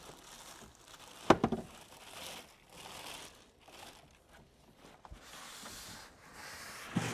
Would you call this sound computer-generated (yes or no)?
no